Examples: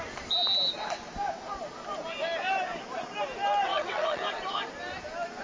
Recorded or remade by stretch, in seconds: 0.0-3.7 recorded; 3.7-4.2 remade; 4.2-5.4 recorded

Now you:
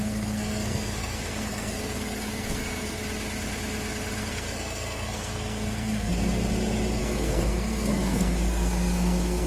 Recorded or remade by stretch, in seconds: 0.0-3.0 remade; 3.0-4.2 recorded; 4.2-6.1 remade; 6.1-7.0 recorded; 7.0-9.5 remade

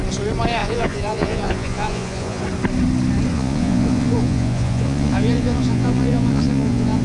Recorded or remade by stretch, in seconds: 0.0-0.6 recorded; 0.6-2.4 remade; 2.4-3.3 recorded; 3.3-7.0 remade

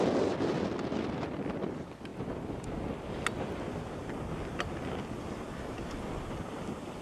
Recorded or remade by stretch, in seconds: 0.0-7.0 recorded

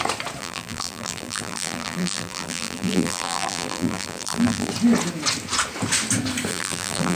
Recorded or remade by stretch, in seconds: 0.0-0.4 recorded; 0.4-4.7 remade; 4.7-6.5 recorded; 6.5-7.2 remade